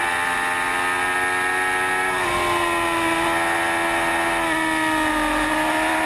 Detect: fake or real real